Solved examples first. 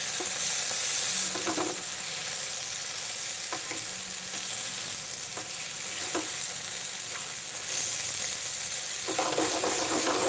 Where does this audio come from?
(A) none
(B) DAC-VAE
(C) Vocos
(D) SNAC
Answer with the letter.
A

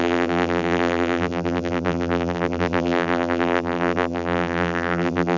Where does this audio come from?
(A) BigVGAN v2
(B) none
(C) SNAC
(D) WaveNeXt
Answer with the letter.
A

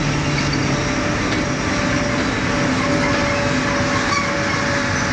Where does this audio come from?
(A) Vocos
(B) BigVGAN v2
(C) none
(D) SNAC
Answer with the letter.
C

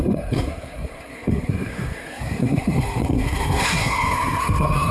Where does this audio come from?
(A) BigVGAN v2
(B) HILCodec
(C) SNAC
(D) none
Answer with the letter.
C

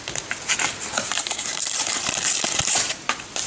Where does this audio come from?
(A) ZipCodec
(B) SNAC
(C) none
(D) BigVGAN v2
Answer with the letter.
D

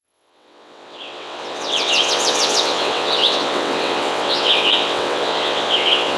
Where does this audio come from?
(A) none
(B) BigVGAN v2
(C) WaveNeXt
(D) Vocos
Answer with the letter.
C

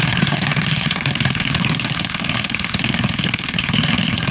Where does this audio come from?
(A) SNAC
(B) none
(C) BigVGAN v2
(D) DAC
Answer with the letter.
A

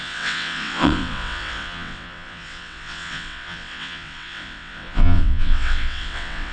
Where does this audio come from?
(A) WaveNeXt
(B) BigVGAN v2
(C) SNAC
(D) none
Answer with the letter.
A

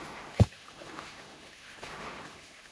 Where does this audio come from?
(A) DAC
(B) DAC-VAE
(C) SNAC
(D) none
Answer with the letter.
B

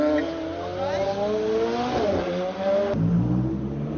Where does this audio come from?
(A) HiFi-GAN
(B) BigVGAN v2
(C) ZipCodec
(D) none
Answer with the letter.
D